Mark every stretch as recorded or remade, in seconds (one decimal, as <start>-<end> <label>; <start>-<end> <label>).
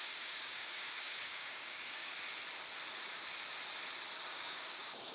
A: 0.0-2.1 remade; 2.1-4.3 recorded; 4.3-5.1 remade